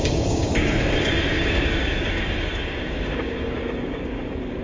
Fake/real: fake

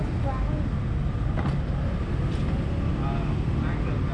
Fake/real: real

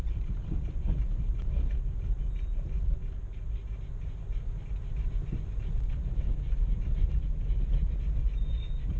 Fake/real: real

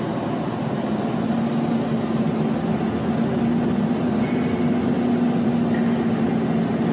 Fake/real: real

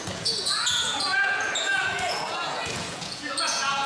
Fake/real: fake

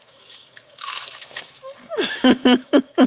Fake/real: fake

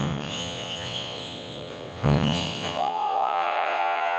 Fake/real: fake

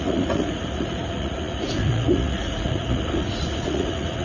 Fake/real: fake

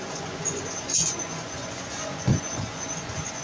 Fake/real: fake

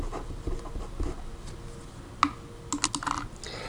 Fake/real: real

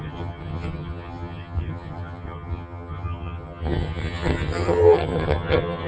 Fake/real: fake